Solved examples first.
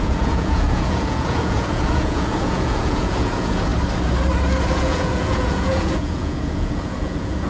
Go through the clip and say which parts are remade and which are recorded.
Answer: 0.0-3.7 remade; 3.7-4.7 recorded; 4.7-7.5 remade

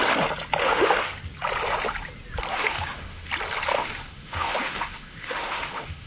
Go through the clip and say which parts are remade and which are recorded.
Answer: 0.0-0.6 recorded; 0.6-1.2 remade; 1.2-2.5 recorded; 2.5-3.3 remade; 3.3-3.7 recorded; 3.7-6.1 remade

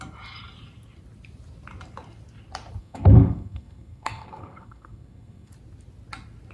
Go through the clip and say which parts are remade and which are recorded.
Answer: 0.0-2.8 recorded; 2.8-5.5 remade; 5.5-6.5 recorded

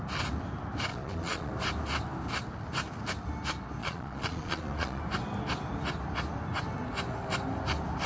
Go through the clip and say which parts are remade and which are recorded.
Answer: 0.0-0.9 recorded; 0.9-1.5 remade; 1.5-3.8 recorded; 3.8-5.0 remade; 5.0-8.1 recorded